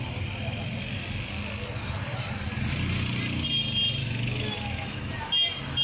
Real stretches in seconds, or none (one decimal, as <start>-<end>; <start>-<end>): 0.0-4.0; 5.1-5.8